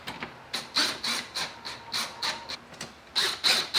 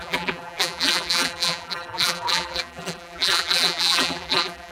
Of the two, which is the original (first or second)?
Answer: first